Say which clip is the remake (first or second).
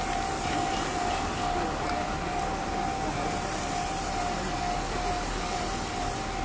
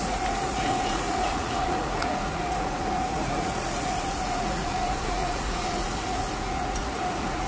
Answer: second